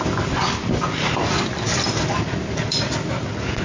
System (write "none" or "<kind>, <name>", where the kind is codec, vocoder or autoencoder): none